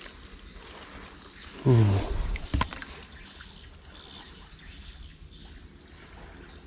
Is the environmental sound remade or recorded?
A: recorded